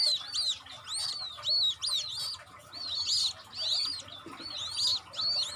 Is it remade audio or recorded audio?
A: recorded